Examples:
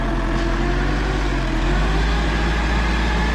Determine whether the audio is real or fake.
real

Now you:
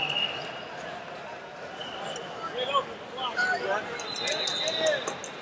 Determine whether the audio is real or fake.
real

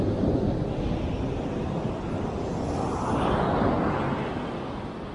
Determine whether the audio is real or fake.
real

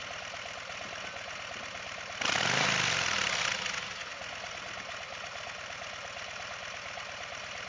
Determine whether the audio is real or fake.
real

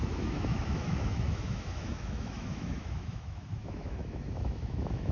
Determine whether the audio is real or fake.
fake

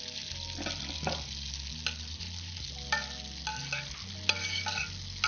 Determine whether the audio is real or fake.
real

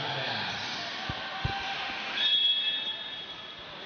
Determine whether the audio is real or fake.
real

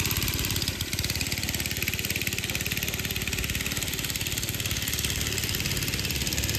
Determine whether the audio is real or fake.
real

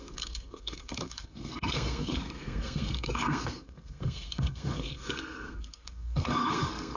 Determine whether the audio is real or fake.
fake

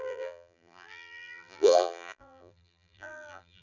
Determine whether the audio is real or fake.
fake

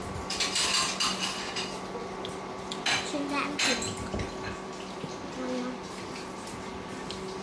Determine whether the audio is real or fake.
real